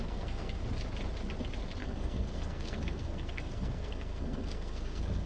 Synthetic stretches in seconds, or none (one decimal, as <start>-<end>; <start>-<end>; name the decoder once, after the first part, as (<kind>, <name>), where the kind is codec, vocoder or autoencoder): 0.0-0.6 (codec, SNAC); 1.8-5.3